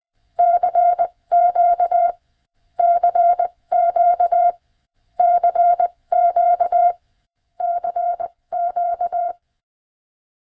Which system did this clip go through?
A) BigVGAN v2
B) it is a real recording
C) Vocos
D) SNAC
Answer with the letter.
C